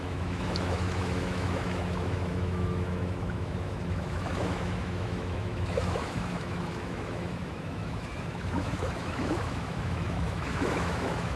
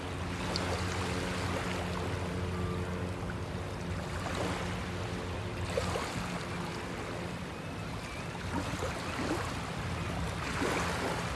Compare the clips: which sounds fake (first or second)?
first